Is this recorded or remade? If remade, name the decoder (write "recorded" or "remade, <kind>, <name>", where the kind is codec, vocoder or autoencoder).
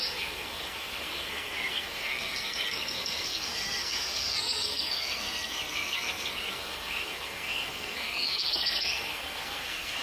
remade, codec, SNAC